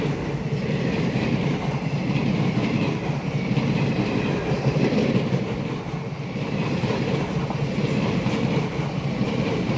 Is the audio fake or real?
real